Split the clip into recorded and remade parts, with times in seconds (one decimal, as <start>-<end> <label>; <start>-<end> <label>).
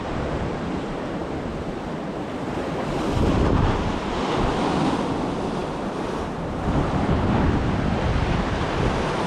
0.0-9.3 remade